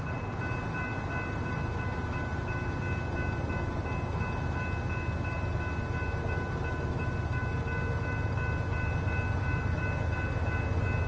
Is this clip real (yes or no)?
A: yes